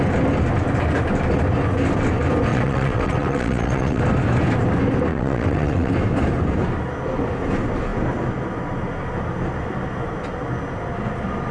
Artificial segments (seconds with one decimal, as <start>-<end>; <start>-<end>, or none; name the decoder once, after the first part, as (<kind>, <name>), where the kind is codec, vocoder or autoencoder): 2.5-4.0 (vocoder, WaveNeXt); 5.1-5.9